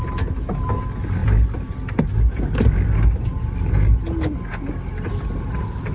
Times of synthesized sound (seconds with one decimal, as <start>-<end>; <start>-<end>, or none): none

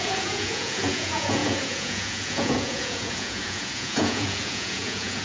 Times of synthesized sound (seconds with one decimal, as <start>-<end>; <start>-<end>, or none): 0.0-5.2